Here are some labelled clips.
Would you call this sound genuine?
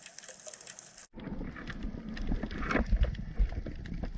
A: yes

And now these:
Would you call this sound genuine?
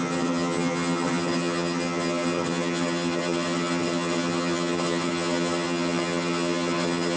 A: no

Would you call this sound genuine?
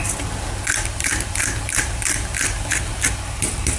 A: no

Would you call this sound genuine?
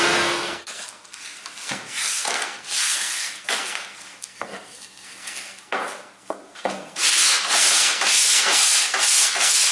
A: no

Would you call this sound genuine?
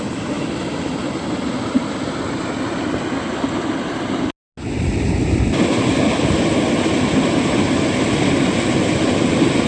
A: yes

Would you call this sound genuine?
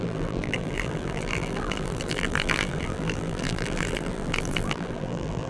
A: no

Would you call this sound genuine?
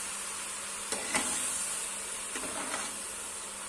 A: yes